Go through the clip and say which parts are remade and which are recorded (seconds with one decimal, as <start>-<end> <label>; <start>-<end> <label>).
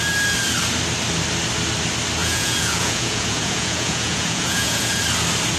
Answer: 0.0-2.2 recorded; 2.2-5.0 remade; 5.0-5.6 recorded